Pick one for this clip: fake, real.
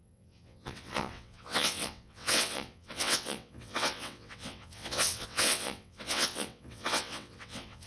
fake